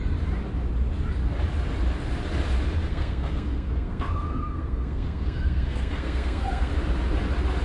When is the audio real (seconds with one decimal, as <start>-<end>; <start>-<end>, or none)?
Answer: 0.0-2.9; 6.7-7.6